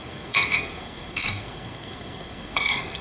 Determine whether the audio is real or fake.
fake